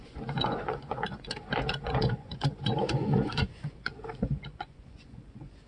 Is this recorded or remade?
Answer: remade